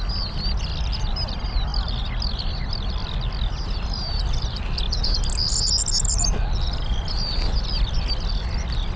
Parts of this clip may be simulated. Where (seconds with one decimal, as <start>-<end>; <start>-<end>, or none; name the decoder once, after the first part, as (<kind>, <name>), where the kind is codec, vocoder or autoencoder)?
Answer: none